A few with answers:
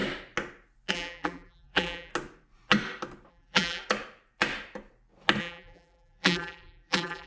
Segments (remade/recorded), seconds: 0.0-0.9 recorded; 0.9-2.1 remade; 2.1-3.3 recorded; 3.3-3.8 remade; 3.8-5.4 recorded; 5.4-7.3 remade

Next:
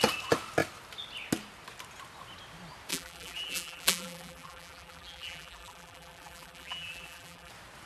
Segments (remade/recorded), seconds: 0.0-2.9 recorded; 2.9-7.5 remade; 7.5-7.9 recorded

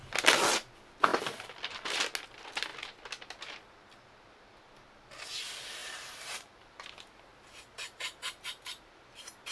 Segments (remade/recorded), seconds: 0.0-1.1 recorded; 1.1-2.0 remade; 2.0-5.8 recorded; 5.8-6.8 remade; 6.8-7.3 recorded; 7.3-9.5 remade